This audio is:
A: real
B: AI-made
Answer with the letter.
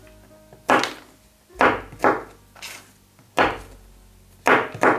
A